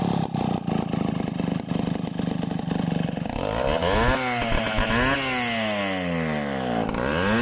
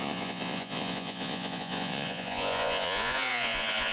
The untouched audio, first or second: first